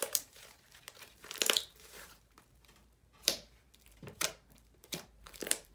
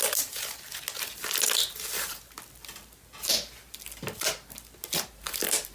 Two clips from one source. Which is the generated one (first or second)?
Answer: first